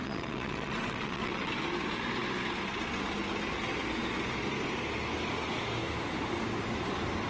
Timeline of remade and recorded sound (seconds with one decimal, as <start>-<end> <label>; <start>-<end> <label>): 0.0-1.5 remade; 1.5-7.3 recorded